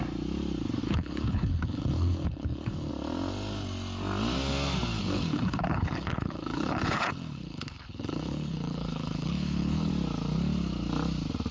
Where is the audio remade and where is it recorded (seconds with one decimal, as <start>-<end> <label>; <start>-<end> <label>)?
0.0-0.8 recorded; 0.8-2.9 remade; 2.9-5.0 recorded; 5.0-9.9 remade; 9.9-11.5 recorded